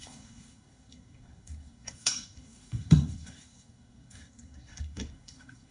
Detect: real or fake fake